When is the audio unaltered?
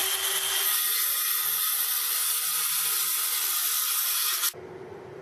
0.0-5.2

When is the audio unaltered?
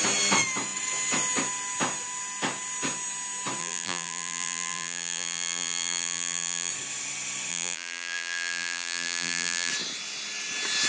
0.0-3.6; 6.7-7.5; 9.7-10.9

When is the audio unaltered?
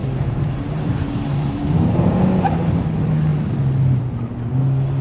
2.2-5.0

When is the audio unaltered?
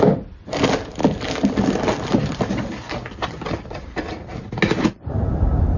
0.0-5.8